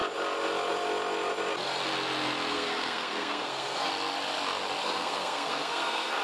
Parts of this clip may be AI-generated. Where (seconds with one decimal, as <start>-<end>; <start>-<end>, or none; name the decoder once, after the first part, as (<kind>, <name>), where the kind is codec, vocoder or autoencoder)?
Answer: 2.5-3.9 (codec, SNAC); 4.8-6.2